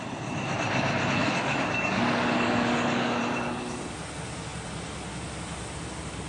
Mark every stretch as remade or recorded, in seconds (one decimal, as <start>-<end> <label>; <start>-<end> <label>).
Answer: 0.0-1.2 recorded; 1.2-3.2 remade; 3.2-6.3 recorded